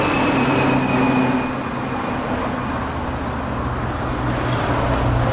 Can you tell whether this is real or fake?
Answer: real